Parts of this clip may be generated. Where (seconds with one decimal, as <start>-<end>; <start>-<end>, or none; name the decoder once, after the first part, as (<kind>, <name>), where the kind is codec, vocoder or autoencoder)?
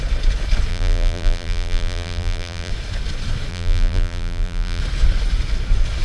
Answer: 0.7-2.7 (vocoder, BigVGAN v2); 3.5-4.8